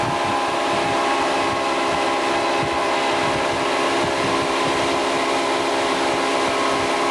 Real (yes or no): yes